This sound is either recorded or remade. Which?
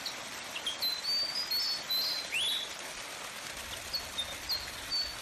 recorded